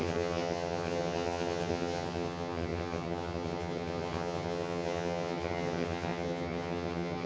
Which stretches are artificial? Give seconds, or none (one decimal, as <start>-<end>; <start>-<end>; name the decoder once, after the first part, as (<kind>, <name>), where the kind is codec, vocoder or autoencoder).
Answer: 0.0-7.3 (vocoder, HiFi-GAN)